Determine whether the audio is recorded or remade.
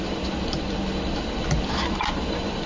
recorded